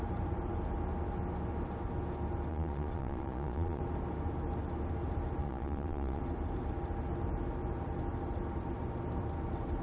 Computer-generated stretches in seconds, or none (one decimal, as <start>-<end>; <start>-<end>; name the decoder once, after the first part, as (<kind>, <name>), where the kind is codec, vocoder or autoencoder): 2.5-3.8 (vocoder, Vocos); 5.4-6.2